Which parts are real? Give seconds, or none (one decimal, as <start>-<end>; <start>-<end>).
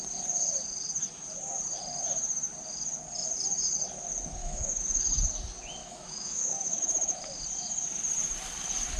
0.0-4.4; 5.0-5.8; 7.2-9.0